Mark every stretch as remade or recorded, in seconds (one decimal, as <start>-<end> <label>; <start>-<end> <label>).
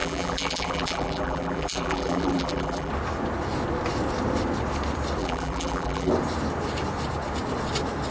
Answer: 0.0-2.9 remade; 2.9-5.2 recorded; 5.2-6.1 remade; 6.1-8.1 recorded